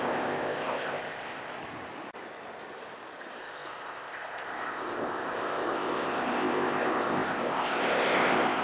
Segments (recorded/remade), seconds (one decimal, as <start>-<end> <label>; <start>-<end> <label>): 0.0-1.5 remade; 1.5-3.4 recorded; 3.4-8.6 remade